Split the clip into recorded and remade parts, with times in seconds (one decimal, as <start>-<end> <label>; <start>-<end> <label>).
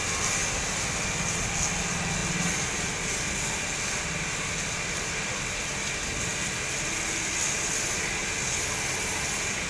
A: 0.0-9.7 recorded